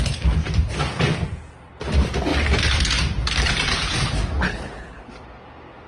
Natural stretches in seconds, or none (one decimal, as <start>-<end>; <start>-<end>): 0.0-4.5; 5.1-5.9